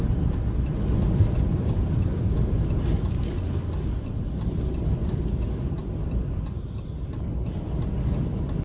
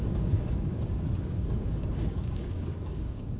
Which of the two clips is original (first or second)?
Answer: first